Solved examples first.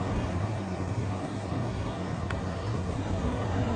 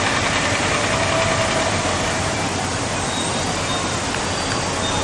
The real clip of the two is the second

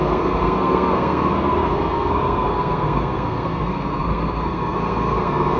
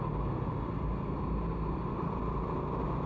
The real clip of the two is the second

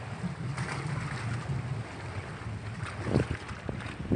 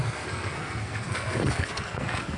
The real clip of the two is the first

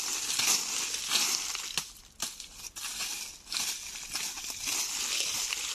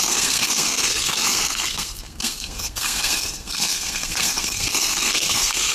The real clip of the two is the first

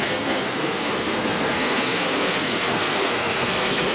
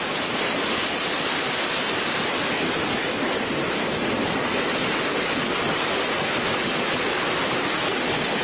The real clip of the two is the second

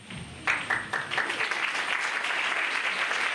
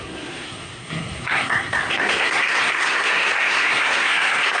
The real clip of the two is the first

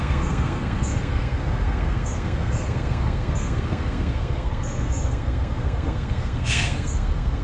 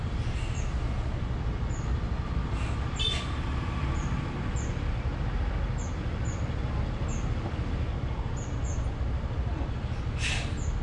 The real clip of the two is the second